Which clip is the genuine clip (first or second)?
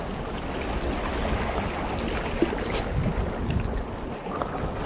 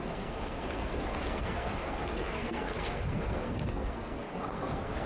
first